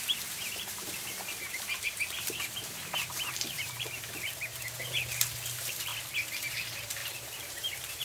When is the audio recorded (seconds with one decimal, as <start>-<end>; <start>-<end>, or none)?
5.9-6.4